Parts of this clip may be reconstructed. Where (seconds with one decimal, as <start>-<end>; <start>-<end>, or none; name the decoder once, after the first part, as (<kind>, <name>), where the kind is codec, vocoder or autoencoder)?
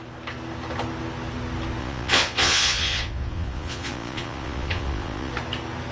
1.8-5.3 (vocoder, Vocos)